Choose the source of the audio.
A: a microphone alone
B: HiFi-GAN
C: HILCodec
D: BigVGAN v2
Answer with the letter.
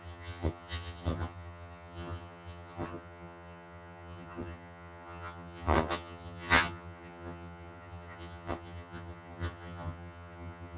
B